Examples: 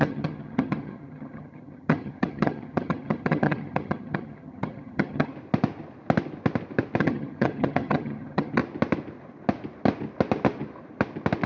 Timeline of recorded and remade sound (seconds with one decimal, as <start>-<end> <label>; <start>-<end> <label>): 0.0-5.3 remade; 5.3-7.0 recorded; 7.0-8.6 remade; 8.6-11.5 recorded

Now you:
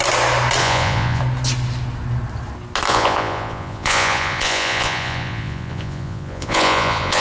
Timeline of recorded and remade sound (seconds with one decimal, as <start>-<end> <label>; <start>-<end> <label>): 0.0-0.6 recorded; 0.6-1.2 remade; 1.2-2.9 recorded; 2.9-7.2 remade

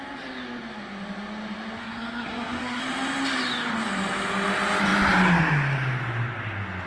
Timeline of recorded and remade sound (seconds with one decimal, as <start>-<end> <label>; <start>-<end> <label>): 0.0-1.8 recorded; 1.8-2.8 remade; 2.8-6.9 recorded

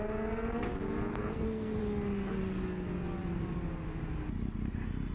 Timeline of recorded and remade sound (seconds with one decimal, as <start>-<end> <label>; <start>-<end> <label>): 0.0-1.1 recorded; 1.1-1.8 remade; 1.8-5.1 recorded

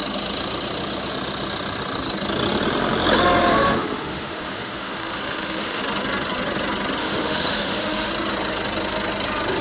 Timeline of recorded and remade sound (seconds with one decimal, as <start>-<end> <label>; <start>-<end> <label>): 0.0-3.5 recorded; 3.5-5.8 remade; 5.8-7.0 recorded; 7.0-8.1 remade; 8.1-9.6 recorded

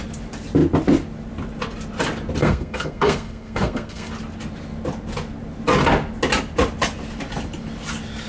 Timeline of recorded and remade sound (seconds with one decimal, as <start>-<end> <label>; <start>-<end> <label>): 0.0-2.4 recorded; 2.4-4.1 remade; 4.1-8.3 recorded

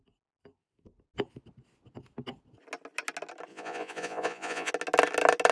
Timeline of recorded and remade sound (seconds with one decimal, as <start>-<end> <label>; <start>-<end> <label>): 0.0-3.5 recorded; 3.5-4.7 remade; 4.7-5.5 recorded

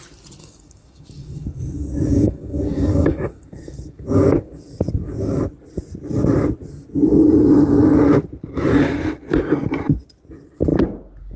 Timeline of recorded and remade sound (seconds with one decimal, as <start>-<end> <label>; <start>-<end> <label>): 0.0-0.4 recorded; 0.4-5.4 remade; 5.4-11.4 recorded